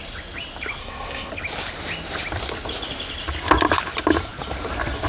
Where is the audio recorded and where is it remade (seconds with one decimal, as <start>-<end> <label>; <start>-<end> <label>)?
0.0-0.8 recorded; 0.8-1.3 remade; 1.3-5.1 recorded